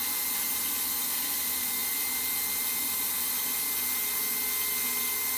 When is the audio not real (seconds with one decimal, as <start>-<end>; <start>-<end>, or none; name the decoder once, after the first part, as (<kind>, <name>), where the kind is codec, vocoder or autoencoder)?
none